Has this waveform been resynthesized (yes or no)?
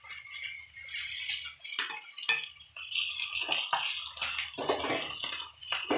no